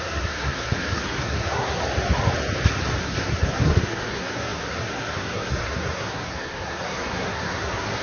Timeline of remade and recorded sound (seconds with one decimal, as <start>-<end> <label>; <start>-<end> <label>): 0.0-1.8 remade; 1.8-3.0 recorded; 3.0-8.0 remade

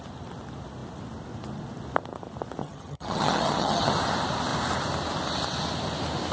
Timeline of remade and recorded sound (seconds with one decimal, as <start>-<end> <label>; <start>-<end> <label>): 0.0-2.6 recorded; 2.6-3.9 remade; 3.9-6.3 recorded